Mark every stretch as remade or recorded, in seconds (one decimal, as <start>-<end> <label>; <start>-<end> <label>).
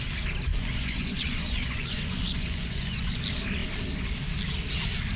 0.0-0.5 recorded; 0.5-3.2 remade; 3.2-5.2 recorded